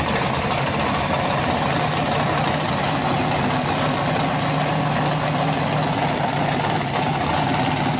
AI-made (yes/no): no